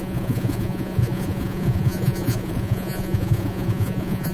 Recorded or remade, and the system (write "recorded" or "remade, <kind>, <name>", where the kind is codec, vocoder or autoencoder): remade, vocoder, Vocos